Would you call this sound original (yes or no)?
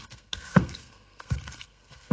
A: no